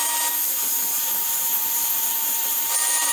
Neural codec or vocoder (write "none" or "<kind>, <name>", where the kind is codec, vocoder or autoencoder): vocoder, BigVGAN v2